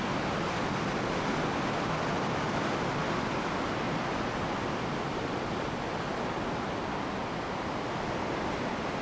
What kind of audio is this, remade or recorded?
recorded